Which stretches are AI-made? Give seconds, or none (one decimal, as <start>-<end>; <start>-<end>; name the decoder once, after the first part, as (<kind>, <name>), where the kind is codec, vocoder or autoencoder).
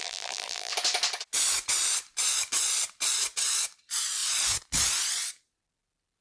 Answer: 0.0-0.7 (vocoder, BigVGAN v2)